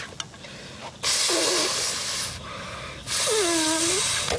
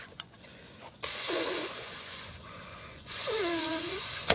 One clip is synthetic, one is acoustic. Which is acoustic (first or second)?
first